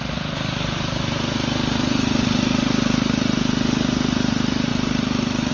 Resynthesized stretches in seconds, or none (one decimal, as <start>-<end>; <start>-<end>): none

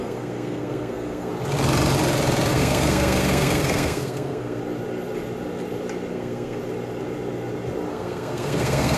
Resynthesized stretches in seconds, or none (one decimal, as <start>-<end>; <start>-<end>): 0.0-1.3; 2.5-4.6; 6.1-6.6; 7.9-9.0